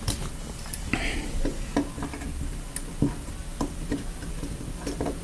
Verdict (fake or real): real